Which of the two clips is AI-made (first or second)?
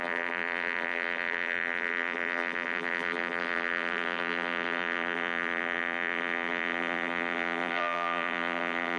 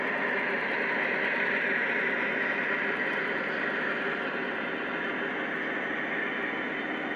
first